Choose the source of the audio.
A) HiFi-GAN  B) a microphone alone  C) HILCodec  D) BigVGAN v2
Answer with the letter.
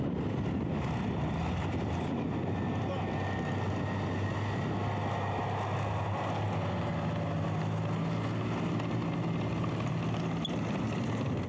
B